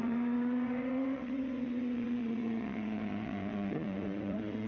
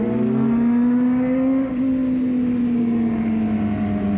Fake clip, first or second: first